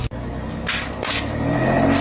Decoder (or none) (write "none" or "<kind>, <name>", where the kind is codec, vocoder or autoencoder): none